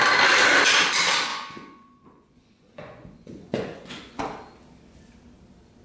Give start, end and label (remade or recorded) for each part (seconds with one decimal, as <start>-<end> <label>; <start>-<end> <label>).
0.0-1.3 recorded; 1.3-4.2 remade; 4.2-5.8 recorded

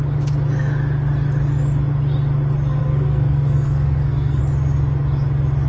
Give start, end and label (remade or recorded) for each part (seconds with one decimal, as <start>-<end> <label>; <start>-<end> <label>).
0.0-2.8 recorded; 2.8-4.4 remade; 4.4-5.7 recorded

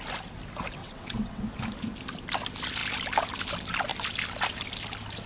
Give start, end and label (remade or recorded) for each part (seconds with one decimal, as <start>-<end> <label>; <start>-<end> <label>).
0.0-0.8 recorded; 0.8-1.4 remade; 1.4-5.3 recorded

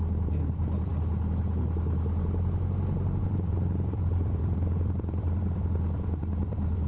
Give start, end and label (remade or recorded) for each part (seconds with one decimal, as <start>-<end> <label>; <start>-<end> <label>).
0.0-0.9 remade; 0.9-3.2 recorded; 3.2-6.9 remade